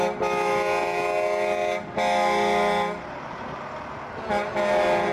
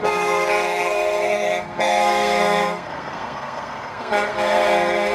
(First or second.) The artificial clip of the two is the second